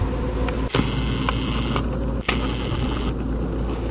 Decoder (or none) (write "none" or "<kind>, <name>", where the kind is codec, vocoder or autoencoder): none